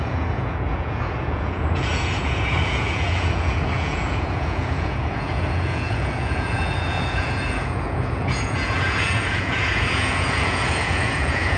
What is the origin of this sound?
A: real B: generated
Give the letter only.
B